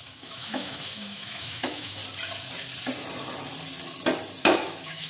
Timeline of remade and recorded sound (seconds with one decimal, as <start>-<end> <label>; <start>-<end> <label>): 0.0-2.0 remade; 2.0-4.4 recorded; 4.4-5.1 remade